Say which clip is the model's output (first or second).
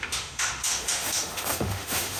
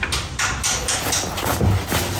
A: first